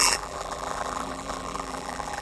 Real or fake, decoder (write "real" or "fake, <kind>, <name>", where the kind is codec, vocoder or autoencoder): fake, vocoder, BigVGAN v2